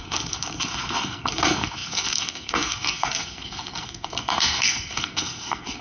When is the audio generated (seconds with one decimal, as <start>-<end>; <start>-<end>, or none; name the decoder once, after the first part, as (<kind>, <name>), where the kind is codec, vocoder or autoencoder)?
0.0-5.8 (codec, SNAC)